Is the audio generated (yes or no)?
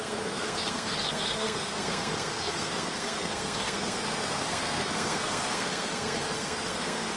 yes